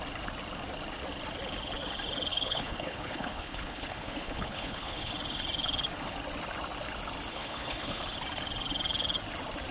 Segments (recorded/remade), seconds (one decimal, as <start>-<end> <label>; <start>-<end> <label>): 0.0-2.3 recorded; 2.3-5.1 remade; 5.1-7.3 recorded; 7.3-8.0 remade; 8.0-9.7 recorded